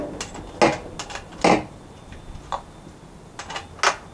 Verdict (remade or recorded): recorded